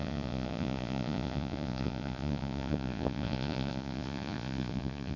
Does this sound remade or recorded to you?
remade